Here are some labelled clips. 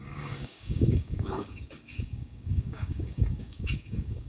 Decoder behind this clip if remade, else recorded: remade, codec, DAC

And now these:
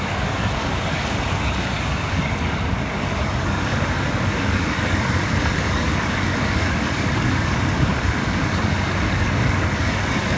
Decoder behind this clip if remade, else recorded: remade, codec, DAC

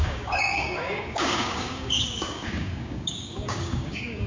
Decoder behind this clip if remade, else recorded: remade, codec, DAC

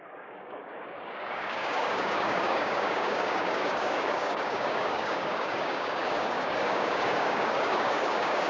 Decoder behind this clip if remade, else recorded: remade, codec, DAC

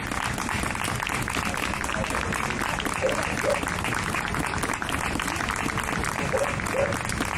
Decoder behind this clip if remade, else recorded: recorded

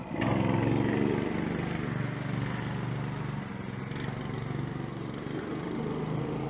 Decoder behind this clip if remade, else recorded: recorded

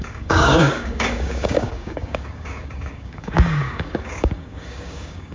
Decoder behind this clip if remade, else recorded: remade, codec, DAC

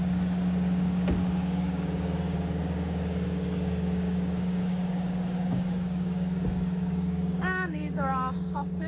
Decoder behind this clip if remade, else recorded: remade, codec, DAC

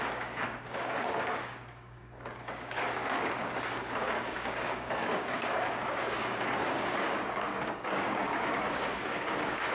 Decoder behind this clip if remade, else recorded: remade, codec, DAC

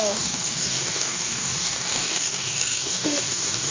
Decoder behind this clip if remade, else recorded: remade, codec, DAC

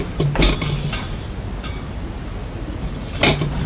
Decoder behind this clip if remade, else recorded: recorded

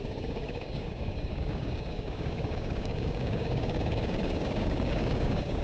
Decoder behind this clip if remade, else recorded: remade, codec, DAC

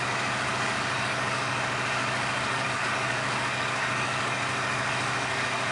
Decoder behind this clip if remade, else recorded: remade, codec, DAC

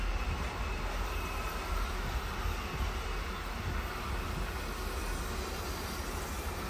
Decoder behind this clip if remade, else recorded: recorded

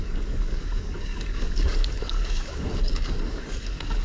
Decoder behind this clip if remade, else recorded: remade, codec, DAC